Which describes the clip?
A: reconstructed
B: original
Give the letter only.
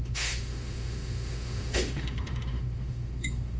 A